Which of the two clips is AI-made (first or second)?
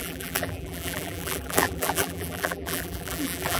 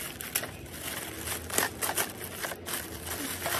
first